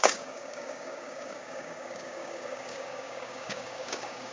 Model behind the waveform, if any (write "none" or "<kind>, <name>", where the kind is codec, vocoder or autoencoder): codec, DAC